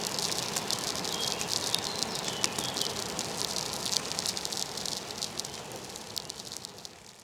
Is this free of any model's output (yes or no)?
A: yes